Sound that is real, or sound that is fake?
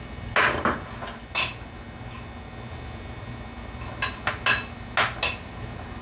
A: real